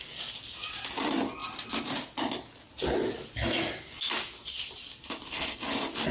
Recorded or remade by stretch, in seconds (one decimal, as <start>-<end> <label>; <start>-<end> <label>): 0.0-6.1 recorded